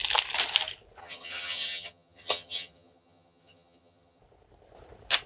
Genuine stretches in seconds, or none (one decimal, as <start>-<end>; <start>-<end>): 0.0-1.0; 4.2-5.3